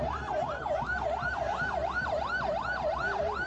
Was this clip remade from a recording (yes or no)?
yes